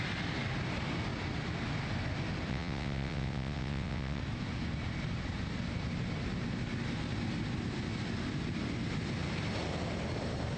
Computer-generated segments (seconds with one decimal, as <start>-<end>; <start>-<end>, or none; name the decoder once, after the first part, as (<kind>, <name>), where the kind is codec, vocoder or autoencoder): 2.5-4.2 (vocoder, WaveNeXt)